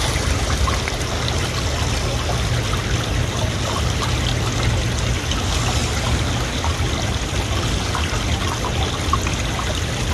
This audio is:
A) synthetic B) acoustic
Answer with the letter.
B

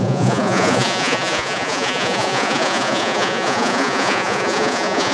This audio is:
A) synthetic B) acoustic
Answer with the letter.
A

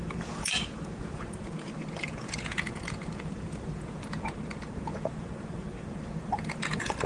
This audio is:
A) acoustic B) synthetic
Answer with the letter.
B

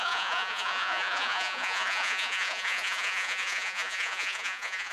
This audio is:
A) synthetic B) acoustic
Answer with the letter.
A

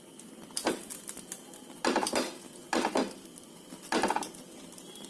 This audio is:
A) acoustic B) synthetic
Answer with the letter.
A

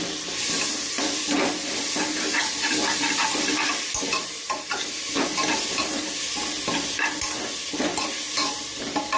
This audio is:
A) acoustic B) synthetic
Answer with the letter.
A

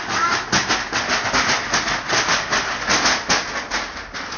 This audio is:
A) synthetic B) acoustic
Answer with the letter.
B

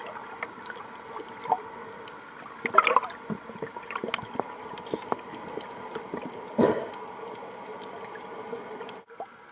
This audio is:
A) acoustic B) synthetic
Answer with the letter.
A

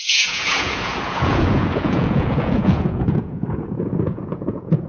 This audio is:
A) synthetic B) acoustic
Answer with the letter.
A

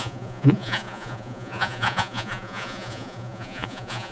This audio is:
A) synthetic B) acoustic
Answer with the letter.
A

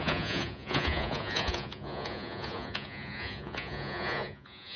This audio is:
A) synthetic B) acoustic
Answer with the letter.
A